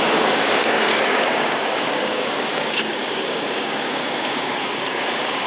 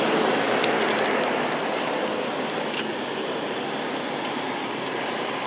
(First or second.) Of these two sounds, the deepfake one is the first